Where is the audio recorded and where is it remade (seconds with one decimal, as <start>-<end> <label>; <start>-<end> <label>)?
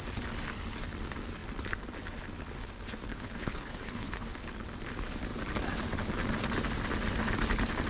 0.0-3.1 recorded; 3.1-4.3 remade; 4.3-7.9 recorded